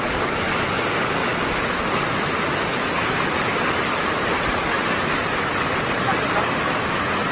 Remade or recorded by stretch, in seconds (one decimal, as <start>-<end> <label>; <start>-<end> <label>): 0.0-7.3 recorded